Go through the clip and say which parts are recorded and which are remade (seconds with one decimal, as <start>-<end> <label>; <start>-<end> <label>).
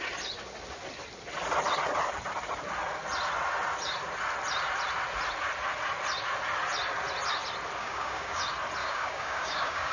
0.0-7.8 recorded; 7.8-8.4 remade; 8.4-8.8 recorded; 8.8-9.9 remade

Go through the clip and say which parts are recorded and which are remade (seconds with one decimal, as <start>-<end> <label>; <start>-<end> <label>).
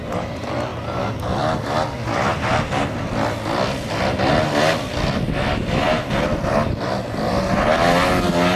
0.0-8.6 recorded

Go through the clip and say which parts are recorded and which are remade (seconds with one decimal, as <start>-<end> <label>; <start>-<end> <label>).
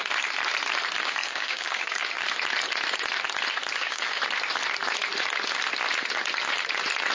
0.0-1.2 recorded; 1.2-2.2 remade; 2.2-3.7 recorded; 3.7-4.2 remade; 4.2-7.1 recorded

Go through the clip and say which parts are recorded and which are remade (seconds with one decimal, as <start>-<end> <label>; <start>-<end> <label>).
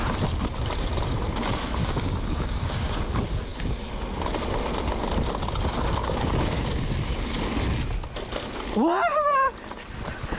0.0-1.8 recorded; 1.8-3.0 remade; 3.0-6.0 recorded; 6.0-6.6 remade; 6.6-10.4 recorded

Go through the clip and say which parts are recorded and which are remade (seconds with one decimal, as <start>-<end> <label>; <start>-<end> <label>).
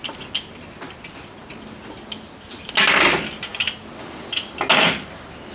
0.0-5.5 recorded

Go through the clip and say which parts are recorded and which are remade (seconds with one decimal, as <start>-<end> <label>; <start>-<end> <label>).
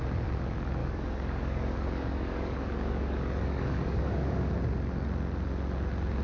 0.0-0.8 recorded; 0.8-4.5 remade; 4.5-6.2 recorded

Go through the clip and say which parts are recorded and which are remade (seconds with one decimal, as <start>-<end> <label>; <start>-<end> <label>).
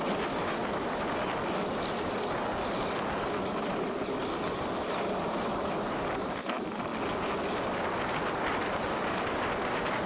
0.0-10.1 recorded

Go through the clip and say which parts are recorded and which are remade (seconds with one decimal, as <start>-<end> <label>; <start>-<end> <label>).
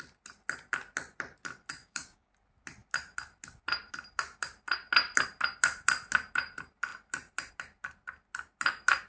0.0-1.8 recorded; 1.8-2.3 remade; 2.3-9.1 recorded